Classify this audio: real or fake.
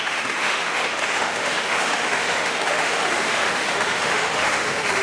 fake